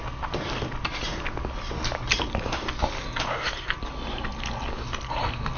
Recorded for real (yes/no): yes